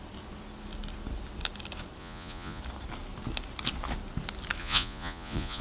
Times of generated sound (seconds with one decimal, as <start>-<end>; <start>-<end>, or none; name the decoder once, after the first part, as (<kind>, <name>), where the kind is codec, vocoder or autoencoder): 2.0-2.6 (vocoder, Vocos); 4.6-5.6